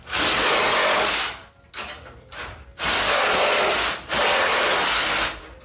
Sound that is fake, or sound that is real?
real